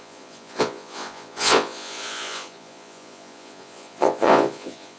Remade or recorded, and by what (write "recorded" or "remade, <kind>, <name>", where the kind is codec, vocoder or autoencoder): remade, vocoder, Vocos